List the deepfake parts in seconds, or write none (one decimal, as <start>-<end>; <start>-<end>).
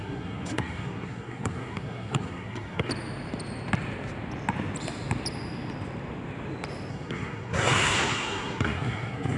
0.0-2.9; 6.9-9.4